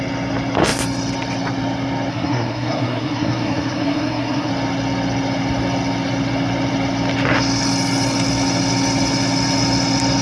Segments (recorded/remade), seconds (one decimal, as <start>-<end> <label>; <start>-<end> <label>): 0.0-2.1 recorded; 2.1-4.5 remade; 4.5-10.2 recorded